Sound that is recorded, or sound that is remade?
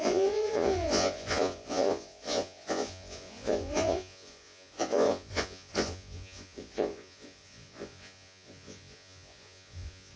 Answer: remade